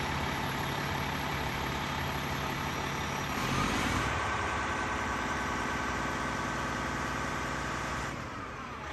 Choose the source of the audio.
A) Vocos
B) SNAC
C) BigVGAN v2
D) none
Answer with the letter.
C